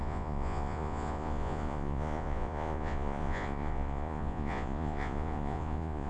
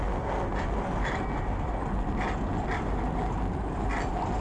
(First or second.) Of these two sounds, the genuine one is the second